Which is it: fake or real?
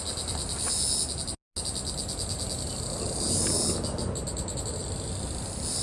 real